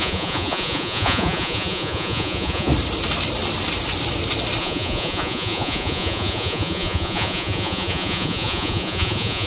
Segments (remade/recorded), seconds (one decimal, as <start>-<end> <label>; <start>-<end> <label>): 0.0-2.7 remade; 2.7-4.6 recorded; 4.6-9.5 remade